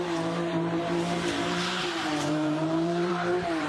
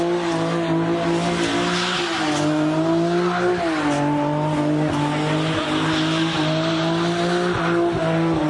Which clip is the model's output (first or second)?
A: first